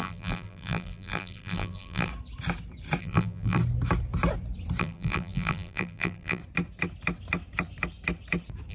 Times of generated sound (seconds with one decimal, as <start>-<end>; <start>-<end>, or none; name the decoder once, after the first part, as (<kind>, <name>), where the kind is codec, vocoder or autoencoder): 0.0-2.1 (vocoder, BigVGAN v2); 3.0-3.6; 4.8-6.4